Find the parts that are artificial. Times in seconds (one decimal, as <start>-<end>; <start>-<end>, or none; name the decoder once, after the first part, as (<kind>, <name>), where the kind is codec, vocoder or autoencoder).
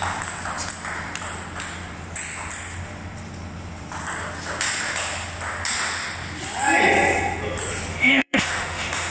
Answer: 7.9-9.1 (autoencoder, DAC-VAE)